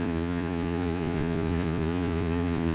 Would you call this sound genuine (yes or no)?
no